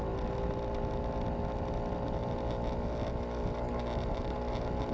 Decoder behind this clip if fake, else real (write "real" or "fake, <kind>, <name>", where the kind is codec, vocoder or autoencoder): real